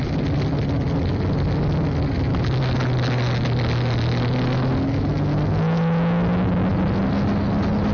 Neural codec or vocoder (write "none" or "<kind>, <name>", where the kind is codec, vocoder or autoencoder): none